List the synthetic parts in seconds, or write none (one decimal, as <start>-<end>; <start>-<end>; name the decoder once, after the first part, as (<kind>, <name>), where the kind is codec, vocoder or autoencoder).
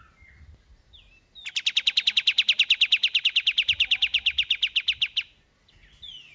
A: none